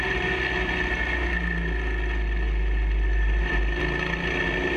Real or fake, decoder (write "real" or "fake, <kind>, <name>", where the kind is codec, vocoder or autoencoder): real